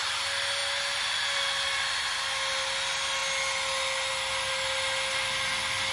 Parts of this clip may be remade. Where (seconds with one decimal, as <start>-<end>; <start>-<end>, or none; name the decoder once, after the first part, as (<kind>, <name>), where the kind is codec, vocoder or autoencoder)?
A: none